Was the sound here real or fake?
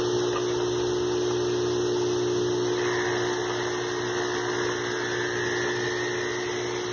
real